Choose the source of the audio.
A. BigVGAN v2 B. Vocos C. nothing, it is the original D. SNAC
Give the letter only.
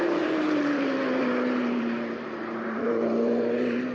A